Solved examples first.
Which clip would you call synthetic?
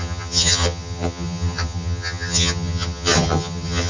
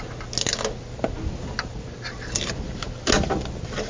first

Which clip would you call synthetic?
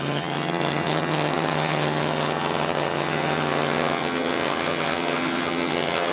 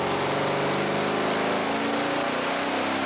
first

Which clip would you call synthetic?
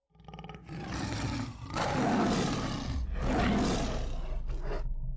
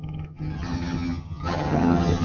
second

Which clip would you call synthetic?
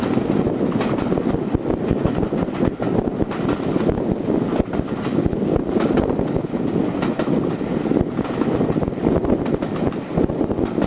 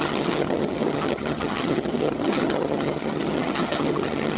second